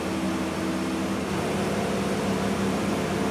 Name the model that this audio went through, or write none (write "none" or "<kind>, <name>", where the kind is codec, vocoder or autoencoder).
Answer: none